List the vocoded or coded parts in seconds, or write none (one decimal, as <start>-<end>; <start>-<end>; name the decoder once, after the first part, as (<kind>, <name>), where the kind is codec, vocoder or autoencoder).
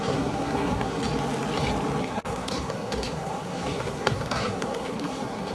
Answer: 0.0-1.0 (codec, SNAC); 2.0-5.5